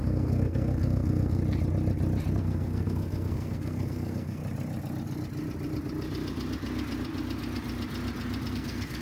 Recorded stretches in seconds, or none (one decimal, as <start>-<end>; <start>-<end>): 1.4-2.3; 4.4-8.5